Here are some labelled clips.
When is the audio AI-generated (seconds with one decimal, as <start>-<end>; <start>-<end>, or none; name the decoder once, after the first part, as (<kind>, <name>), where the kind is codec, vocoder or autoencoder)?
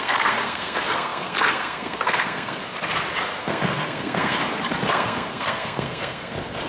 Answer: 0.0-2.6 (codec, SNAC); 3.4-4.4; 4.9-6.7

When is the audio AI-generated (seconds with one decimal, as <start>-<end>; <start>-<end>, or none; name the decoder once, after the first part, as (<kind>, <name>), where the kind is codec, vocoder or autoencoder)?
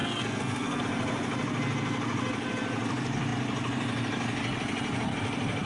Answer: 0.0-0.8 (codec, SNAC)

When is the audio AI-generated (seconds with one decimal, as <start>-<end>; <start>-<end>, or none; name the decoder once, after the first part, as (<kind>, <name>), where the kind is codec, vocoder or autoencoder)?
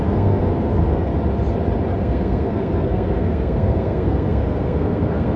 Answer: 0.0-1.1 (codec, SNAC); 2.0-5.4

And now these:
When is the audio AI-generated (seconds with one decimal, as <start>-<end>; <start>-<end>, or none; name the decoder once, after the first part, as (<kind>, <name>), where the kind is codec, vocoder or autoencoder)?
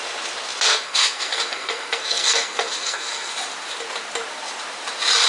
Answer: 0.7-3.3 (codec, SNAC)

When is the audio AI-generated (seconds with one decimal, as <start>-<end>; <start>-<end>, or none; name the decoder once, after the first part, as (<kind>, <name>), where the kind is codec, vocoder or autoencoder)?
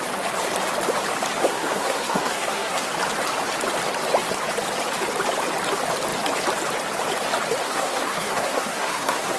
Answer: 1.4-2.9 (codec, SNAC); 7.6-9.4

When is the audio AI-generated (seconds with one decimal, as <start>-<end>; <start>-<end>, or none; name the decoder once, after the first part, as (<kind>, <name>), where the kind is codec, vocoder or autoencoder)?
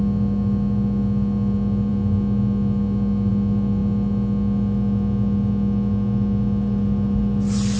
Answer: none